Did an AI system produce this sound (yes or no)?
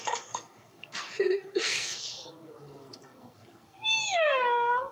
yes